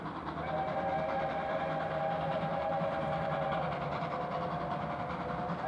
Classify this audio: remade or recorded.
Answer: recorded